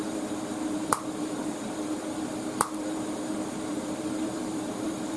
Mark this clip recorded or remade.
remade